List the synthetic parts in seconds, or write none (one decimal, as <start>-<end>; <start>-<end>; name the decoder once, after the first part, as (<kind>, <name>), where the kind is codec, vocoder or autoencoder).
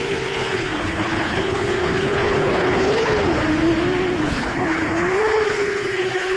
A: 0.0-3.4 (codec, HILCodec); 4.2-6.4